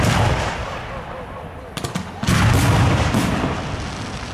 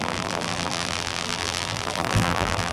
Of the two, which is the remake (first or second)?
second